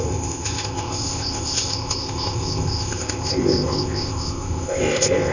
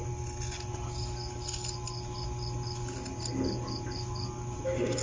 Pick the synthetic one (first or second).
first